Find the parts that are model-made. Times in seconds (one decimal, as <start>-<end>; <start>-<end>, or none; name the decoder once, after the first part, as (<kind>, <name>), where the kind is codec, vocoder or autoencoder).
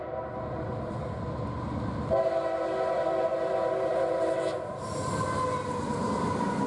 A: none